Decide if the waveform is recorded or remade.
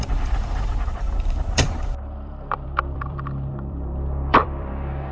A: remade